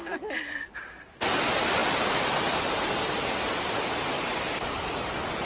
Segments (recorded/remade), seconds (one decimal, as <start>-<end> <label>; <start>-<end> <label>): 0.0-5.5 recorded